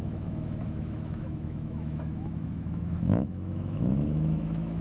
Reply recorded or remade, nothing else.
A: remade